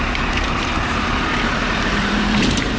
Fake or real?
fake